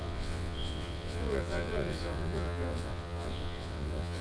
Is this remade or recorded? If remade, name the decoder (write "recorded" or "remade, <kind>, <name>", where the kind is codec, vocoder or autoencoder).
remade, vocoder, WaveNeXt